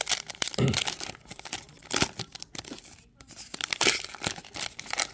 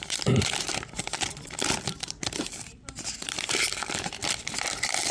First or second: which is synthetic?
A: second